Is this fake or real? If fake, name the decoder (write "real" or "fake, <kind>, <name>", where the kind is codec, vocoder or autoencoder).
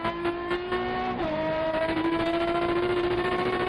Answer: fake, vocoder, BigVGAN v2